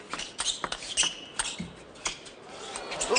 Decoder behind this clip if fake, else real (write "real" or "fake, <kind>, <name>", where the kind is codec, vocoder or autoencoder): real